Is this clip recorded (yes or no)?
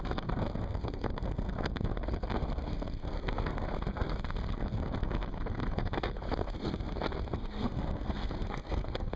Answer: no